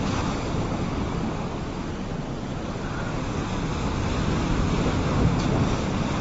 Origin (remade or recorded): recorded